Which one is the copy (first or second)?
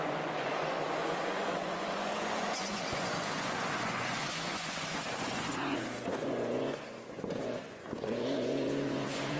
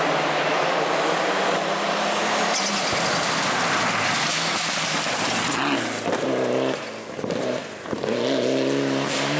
first